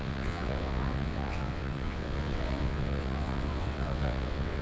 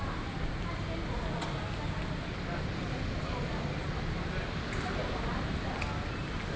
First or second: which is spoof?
first